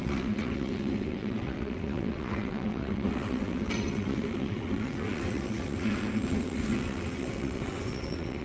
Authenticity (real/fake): fake